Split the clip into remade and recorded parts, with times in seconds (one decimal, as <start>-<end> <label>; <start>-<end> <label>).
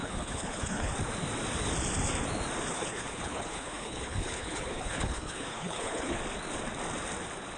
0.0-0.9 remade; 0.9-2.7 recorded; 2.7-6.2 remade; 6.2-7.6 recorded